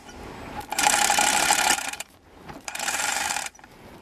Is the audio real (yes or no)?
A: no